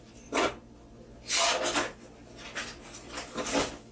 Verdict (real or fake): real